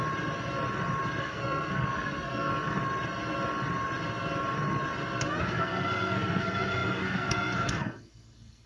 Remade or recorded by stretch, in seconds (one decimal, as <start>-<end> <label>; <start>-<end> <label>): 0.0-1.2 recorded; 1.2-2.5 remade; 2.5-5.4 recorded; 5.4-8.7 remade